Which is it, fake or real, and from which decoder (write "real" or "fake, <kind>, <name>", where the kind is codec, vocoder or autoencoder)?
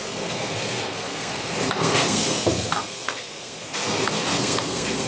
fake, codec, SNAC